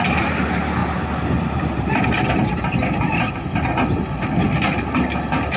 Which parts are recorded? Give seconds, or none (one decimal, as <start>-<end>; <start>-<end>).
0.0-5.6